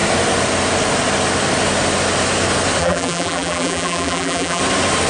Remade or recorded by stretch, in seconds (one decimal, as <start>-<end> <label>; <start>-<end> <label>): 0.0-2.8 recorded; 2.8-4.6 remade; 4.6-5.1 recorded